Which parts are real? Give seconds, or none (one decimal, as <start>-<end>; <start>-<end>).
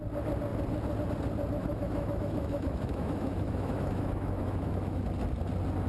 0.0-1.6; 5.0-5.9